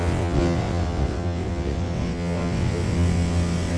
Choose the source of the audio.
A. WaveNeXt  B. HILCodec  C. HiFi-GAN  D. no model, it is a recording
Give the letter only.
A